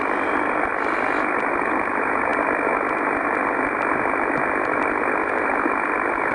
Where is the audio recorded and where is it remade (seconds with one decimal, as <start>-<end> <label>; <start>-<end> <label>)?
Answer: 0.0-6.3 recorded